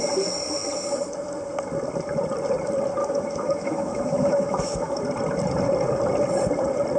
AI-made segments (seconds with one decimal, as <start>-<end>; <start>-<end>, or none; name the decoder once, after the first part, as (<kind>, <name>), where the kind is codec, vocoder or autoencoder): 3.0-5.0 (autoencoder, DAC-VAE)